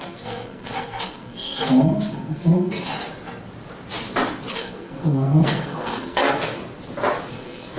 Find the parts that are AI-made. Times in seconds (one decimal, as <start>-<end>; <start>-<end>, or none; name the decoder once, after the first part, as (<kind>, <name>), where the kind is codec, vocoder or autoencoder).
0.0-2.9 (codec, SNAC); 4.5-6.6; 7.3-7.8